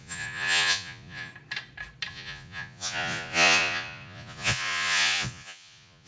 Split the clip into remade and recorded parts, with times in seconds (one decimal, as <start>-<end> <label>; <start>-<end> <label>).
0.0-1.3 remade; 1.3-2.1 recorded; 2.1-6.1 remade